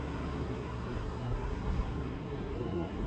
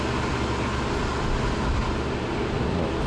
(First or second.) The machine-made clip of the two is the first